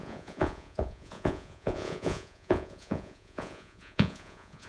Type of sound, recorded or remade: remade